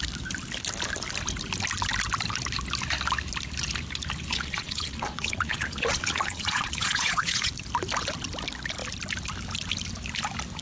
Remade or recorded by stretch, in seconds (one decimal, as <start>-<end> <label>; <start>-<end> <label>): 0.0-4.3 recorded; 4.3-7.5 remade; 7.5-10.6 recorded